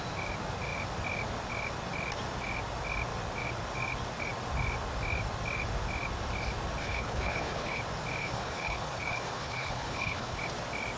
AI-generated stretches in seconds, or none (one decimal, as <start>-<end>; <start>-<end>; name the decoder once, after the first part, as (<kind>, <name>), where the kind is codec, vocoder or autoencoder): 6.8-7.8 (codec, HILCodec); 8.2-10.4